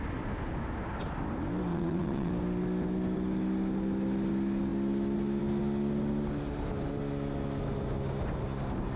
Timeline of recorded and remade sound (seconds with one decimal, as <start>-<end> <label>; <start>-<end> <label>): 0.0-1.7 recorded; 1.7-2.3 remade; 2.3-9.0 recorded